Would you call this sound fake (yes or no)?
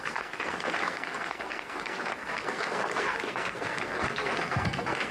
yes